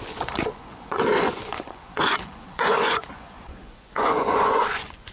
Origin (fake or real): fake